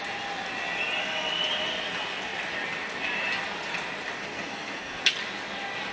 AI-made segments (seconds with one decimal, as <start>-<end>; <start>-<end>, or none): 4.2-5.0